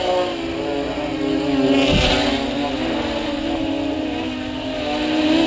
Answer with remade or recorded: recorded